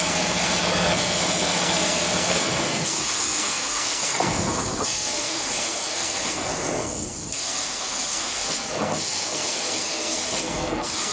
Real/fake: fake